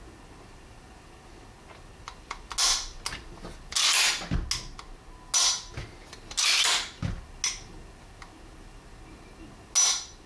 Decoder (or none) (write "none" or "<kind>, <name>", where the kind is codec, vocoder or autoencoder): none